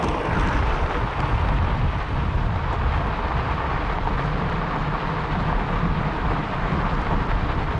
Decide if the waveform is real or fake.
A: real